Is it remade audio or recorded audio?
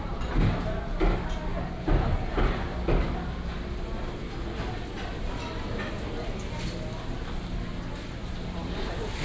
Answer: recorded